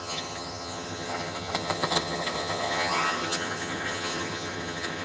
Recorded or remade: remade